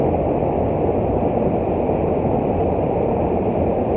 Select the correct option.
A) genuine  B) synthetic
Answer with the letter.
A